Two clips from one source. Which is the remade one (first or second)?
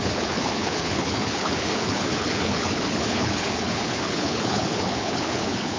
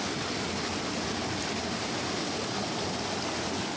first